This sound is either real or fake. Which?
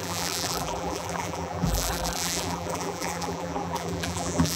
fake